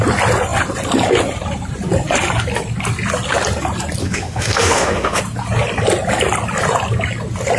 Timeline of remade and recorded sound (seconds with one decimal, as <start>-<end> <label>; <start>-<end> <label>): 0.0-4.0 recorded; 4.0-5.2 remade; 5.2-7.6 recorded